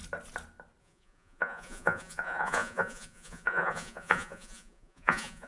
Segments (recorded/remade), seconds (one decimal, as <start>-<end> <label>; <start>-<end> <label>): 0.0-0.8 recorded; 0.8-5.5 remade